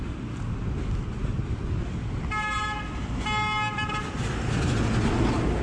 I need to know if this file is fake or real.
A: real